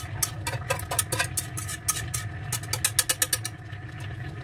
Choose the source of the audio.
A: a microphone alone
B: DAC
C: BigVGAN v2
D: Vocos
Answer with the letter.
A